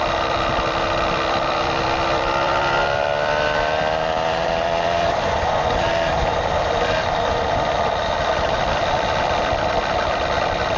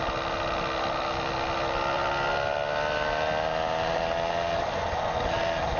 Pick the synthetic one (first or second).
first